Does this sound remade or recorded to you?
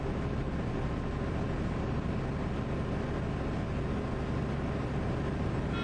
recorded